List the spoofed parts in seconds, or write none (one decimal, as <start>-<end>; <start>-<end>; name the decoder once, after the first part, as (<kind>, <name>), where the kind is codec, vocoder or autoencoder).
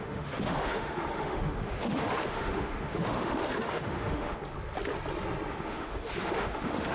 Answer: 0.0-4.4 (autoencoder, DAC-VAE); 5.5-6.9